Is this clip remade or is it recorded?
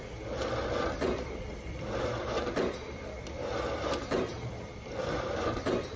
remade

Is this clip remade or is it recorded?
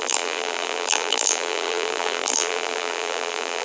remade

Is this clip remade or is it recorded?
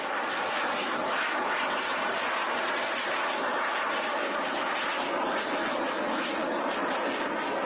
recorded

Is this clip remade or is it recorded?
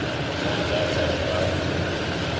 recorded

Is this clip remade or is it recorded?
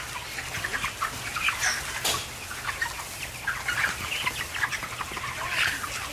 recorded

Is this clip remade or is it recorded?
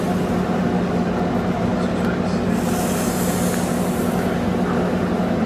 recorded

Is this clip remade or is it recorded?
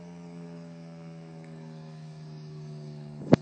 remade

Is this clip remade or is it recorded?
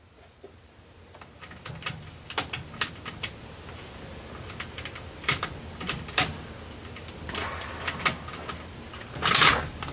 recorded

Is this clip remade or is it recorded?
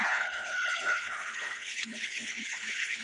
remade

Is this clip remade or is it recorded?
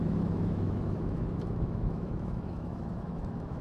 remade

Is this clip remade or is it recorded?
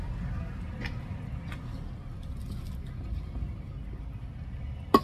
recorded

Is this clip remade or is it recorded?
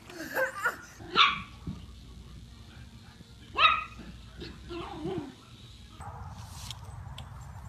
recorded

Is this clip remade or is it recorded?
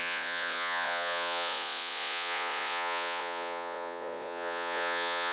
remade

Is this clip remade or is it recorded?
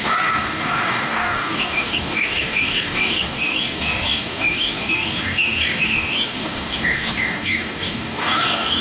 remade